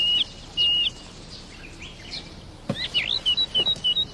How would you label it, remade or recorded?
recorded